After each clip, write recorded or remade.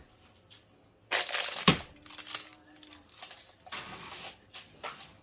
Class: recorded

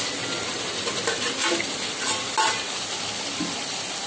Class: recorded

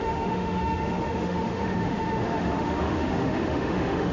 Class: remade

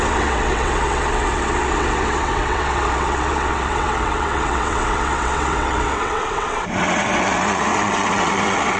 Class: remade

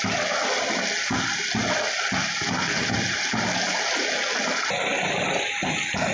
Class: recorded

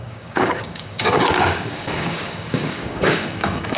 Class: remade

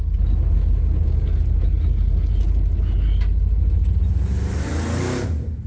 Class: recorded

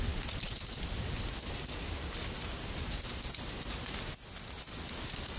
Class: recorded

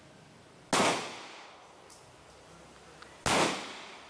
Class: recorded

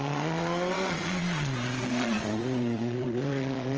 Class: remade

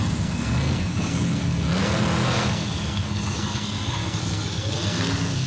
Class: remade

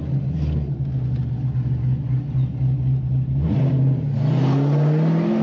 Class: recorded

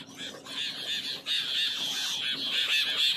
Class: recorded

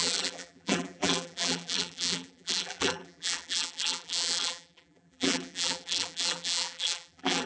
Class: remade